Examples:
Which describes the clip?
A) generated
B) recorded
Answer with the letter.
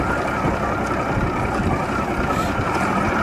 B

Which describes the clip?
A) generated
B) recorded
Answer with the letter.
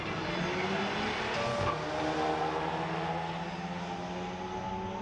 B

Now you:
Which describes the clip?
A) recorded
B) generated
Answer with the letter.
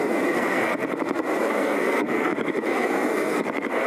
B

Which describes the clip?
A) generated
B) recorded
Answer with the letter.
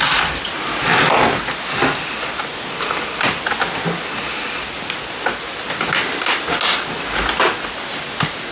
B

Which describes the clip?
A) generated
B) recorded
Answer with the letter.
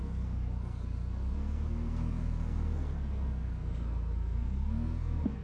A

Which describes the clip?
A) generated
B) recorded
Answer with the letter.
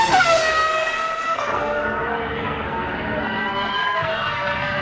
A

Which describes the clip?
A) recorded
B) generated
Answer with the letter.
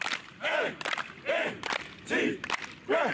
A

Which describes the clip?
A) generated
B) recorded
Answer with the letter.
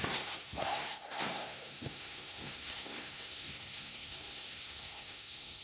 A